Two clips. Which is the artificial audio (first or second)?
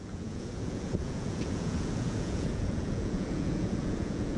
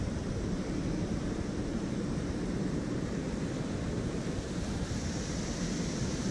first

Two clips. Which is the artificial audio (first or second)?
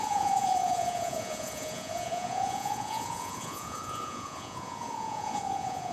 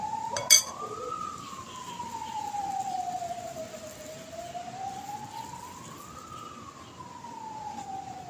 first